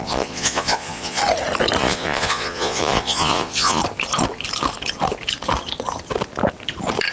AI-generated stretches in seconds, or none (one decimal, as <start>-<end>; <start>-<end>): 0.0-1.2; 1.8-3.8